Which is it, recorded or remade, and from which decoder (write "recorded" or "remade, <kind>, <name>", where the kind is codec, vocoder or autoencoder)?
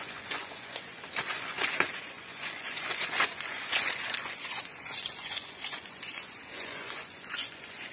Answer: remade, vocoder, Vocos